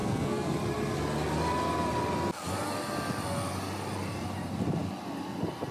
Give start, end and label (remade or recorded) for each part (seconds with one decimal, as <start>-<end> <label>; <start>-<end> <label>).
0.0-0.5 remade; 0.5-5.7 recorded